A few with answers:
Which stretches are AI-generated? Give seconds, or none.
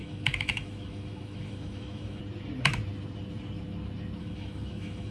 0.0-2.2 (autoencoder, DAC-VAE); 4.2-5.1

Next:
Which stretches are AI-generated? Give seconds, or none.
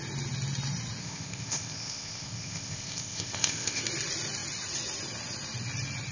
1.0-3.8 (codec, ZipCodec)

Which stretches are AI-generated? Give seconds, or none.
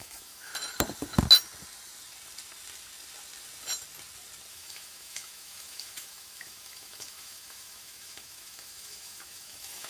0.0-0.5 (autoencoder, DAC-VAE); 4.5-9.9